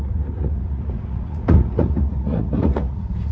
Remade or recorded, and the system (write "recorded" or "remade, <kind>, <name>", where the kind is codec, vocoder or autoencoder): remade, vocoder, Vocos